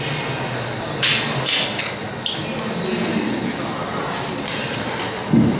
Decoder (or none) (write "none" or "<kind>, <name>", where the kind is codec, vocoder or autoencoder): none